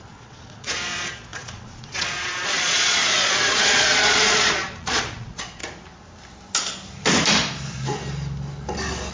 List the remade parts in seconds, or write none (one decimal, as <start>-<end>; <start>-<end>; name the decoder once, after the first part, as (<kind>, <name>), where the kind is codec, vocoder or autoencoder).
0.0-5.6 (vocoder, Vocos)